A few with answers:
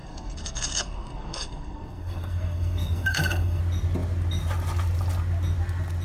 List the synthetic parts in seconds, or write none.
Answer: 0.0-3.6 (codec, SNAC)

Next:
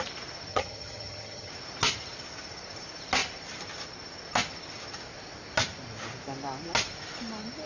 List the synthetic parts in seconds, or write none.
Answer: 0.5-1.5 (vocoder, HiFi-GAN)

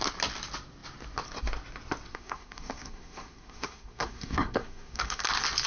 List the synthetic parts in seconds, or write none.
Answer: 2.1-5.2 (codec, SNAC)

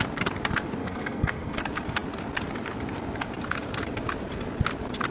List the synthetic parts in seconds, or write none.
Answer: 0.8-1.6 (codec, SNAC)

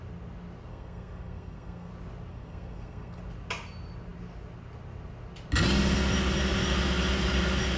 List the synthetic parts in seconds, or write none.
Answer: 0.7-1.9 (codec, SNAC); 2.3-3.2

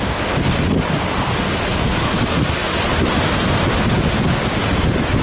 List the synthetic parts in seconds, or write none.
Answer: none

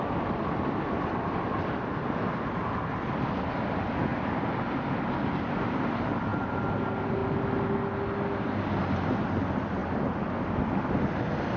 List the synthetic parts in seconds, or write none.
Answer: 6.3-6.8 (vocoder, BigVGAN v2)

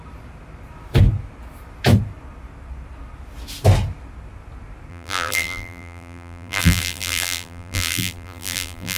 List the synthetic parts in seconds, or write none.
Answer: 4.9-9.0 (vocoder, BigVGAN v2)